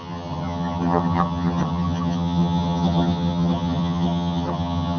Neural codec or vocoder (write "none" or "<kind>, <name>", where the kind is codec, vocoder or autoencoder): vocoder, HiFi-GAN